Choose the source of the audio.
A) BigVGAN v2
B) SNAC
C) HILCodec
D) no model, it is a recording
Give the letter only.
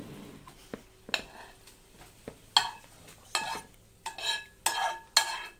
D